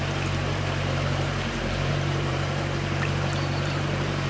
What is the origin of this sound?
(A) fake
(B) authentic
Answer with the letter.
A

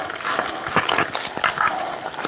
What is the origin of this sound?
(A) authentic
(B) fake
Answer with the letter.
A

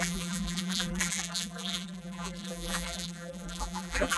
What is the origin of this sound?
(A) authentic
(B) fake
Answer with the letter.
B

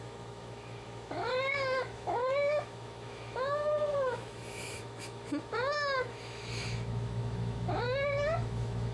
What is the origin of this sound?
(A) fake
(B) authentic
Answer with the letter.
A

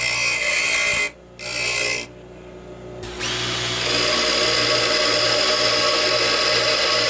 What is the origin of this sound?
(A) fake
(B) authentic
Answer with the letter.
B